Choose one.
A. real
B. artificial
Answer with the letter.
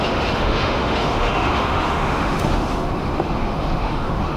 B